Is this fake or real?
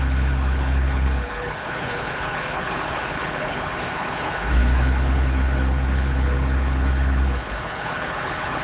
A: fake